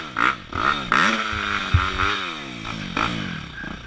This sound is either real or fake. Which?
real